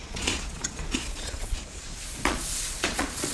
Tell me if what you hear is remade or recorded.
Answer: remade